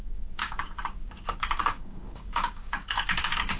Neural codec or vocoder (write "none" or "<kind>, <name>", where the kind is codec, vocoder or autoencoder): codec, DAC